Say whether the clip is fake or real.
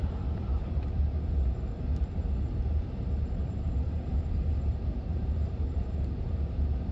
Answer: fake